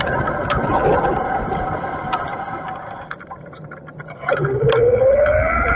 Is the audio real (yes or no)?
yes